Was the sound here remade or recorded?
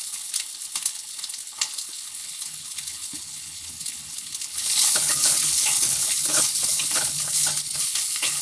remade